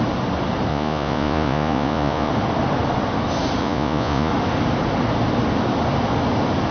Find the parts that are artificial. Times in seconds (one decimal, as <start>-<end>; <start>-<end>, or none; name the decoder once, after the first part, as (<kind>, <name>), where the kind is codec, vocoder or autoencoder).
0.7-2.3 (vocoder, Vocos); 3.6-4.3